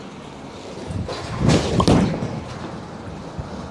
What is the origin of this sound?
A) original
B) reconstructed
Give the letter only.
A